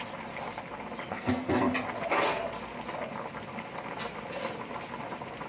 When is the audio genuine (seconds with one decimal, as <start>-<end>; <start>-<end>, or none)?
0.0-1.1; 1.7-5.5